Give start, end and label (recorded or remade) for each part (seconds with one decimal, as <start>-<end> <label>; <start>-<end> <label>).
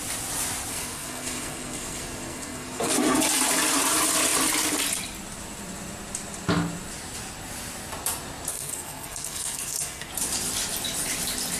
0.0-0.7 recorded; 0.7-3.2 remade; 3.2-8.5 recorded; 8.5-10.1 remade; 10.1-11.6 recorded